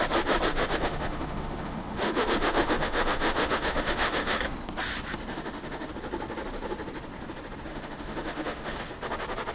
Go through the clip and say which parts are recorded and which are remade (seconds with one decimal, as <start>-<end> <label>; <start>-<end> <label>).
0.0-0.5 recorded; 0.5-4.4 remade; 4.4-5.3 recorded; 5.3-5.9 remade; 5.9-7.7 recorded; 7.7-8.8 remade; 8.8-9.5 recorded